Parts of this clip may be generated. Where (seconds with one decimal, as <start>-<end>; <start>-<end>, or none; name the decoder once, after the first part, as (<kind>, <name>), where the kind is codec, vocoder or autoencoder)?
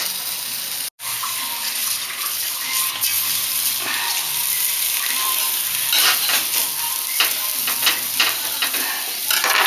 1.8-2.9 (vocoder, BigVGAN v2); 4.4-6.6